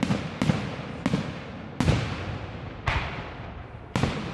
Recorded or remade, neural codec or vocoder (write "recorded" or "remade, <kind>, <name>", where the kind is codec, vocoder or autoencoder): recorded